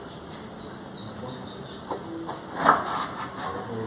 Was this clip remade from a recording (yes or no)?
no